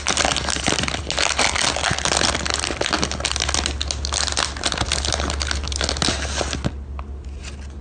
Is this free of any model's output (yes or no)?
yes